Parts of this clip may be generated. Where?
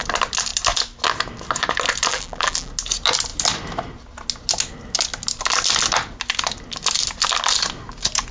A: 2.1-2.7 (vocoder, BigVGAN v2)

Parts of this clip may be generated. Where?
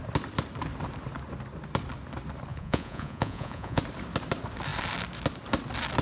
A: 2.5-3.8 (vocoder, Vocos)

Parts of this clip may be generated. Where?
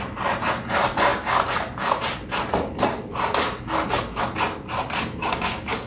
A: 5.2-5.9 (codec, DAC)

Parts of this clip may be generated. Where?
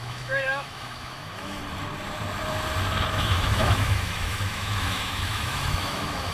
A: 0.0-1.6 (autoencoder, DAC-VAE); 3.1-6.3